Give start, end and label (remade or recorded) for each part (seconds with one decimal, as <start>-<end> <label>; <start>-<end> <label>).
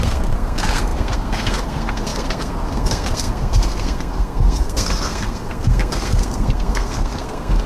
0.0-7.7 remade